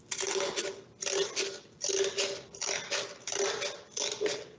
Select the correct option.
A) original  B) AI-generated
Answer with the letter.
A